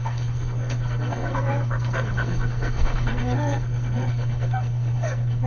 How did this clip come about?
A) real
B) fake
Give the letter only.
B